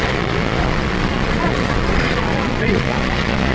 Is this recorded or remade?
remade